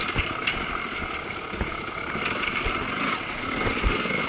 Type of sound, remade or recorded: recorded